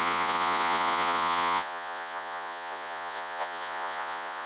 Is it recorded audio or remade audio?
remade